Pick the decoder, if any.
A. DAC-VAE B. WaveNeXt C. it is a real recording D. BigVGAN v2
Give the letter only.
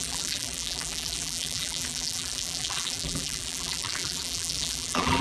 D